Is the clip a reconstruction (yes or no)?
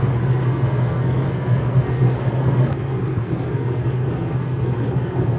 yes